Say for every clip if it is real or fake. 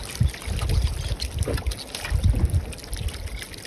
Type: real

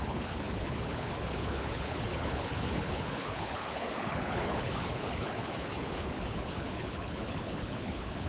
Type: fake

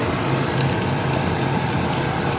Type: real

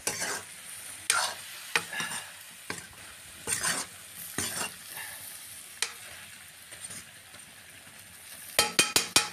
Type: real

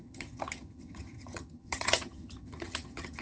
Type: fake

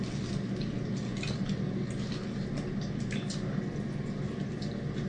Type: real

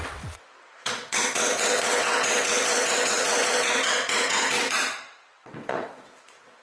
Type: fake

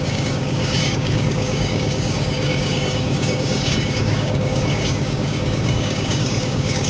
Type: fake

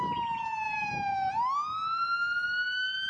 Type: real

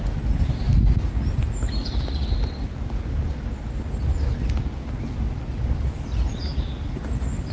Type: real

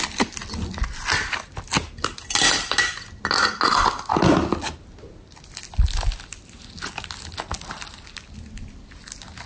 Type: real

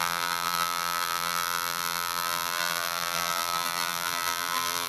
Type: fake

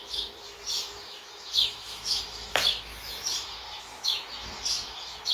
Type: fake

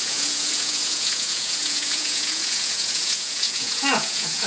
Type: fake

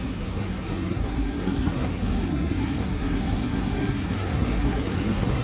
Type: fake